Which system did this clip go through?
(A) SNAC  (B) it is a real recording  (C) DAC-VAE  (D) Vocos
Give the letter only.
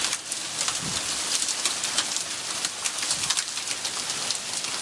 B